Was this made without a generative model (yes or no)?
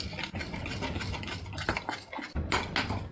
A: yes